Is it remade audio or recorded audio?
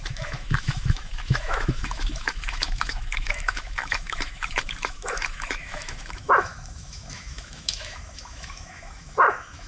remade